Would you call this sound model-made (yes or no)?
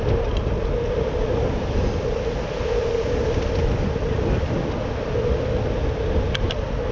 no